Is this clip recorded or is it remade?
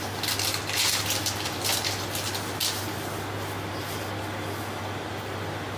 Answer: recorded